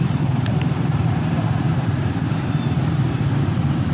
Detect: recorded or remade remade